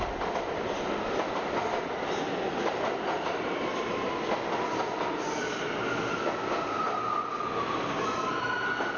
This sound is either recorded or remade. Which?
recorded